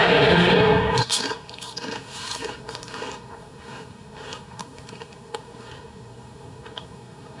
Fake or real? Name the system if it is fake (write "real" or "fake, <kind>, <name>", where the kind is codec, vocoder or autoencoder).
fake, codec, SNAC